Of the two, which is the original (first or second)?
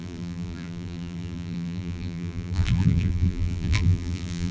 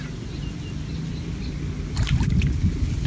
second